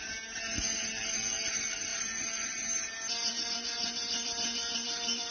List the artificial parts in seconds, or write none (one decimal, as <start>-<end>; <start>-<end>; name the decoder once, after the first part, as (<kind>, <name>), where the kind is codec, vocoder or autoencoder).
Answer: none